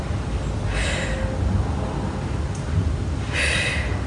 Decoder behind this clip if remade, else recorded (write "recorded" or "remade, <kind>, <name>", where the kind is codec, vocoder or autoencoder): recorded